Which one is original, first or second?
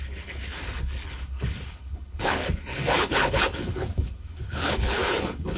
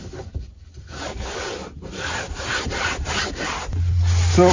second